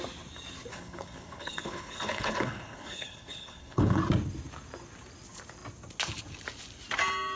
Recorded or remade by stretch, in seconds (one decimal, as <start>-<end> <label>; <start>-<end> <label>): 0.0-0.7 recorded; 0.7-4.0 remade; 4.0-7.4 recorded